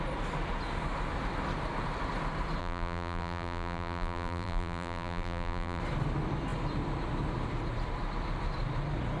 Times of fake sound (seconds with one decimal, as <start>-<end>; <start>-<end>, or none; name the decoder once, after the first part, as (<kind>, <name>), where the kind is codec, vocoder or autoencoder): 2.6-5.8 (vocoder, BigVGAN v2)